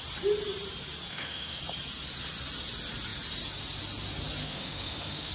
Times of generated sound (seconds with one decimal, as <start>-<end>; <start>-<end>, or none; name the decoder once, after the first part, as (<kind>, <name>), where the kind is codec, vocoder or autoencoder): 1.1-1.6 (autoencoder, DAC-VAE); 4.4-5.3